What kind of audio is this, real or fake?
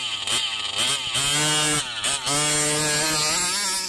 real